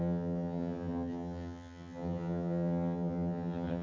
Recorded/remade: remade